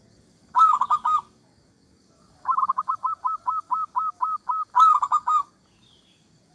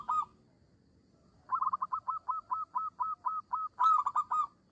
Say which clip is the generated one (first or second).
first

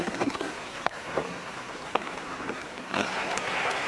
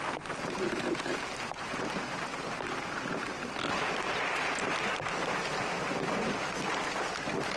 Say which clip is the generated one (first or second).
first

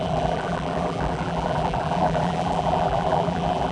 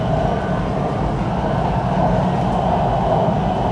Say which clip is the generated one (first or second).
first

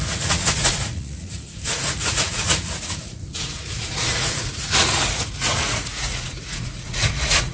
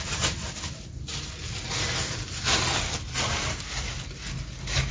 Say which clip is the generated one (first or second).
first